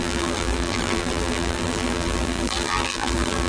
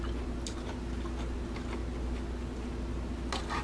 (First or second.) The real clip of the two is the second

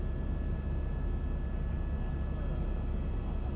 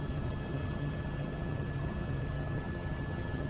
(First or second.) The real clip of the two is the first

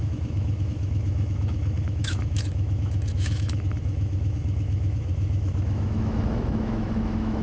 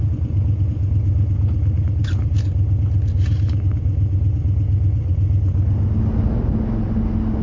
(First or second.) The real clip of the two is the second